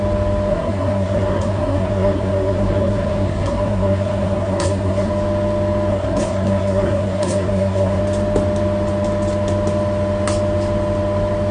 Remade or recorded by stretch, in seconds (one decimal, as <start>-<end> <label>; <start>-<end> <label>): 0.0-0.5 recorded; 0.5-5.1 remade; 5.1-5.9 recorded; 5.9-8.0 remade; 8.0-11.5 recorded